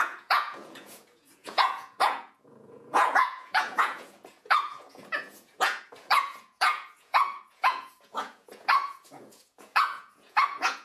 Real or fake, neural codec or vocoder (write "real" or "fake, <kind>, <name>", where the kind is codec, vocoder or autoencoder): fake, vocoder, Vocos